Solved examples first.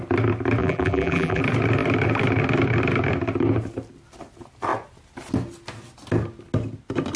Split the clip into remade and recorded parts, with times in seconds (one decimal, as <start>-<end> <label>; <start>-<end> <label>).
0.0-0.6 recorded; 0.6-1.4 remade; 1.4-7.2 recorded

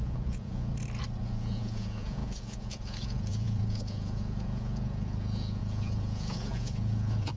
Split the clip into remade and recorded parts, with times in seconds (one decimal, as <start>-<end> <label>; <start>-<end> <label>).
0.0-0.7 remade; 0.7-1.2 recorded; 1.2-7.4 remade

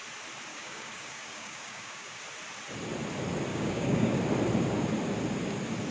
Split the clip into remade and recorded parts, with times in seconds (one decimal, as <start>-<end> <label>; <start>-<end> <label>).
0.0-0.5 recorded; 0.5-2.2 remade; 2.2-3.5 recorded; 3.5-4.2 remade; 4.2-5.9 recorded